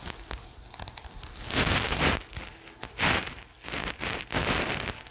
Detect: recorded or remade recorded